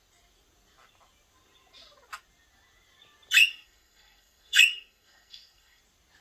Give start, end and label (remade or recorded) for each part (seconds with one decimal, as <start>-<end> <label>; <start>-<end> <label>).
0.0-3.5 recorded; 3.5-5.8 remade; 5.8-6.2 recorded